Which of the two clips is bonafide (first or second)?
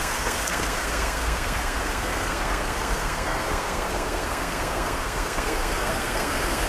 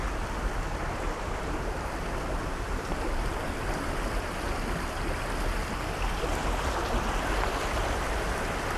second